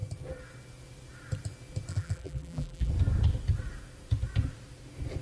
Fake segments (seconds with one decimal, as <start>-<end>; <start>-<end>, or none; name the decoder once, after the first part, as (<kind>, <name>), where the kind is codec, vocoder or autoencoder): 1.9-2.9 (vocoder, BigVGAN v2)

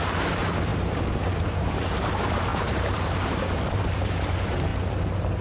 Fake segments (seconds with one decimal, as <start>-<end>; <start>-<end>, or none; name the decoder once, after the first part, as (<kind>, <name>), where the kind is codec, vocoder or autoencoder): 0.0-4.7 (vocoder, BigVGAN v2)